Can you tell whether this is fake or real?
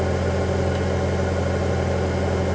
real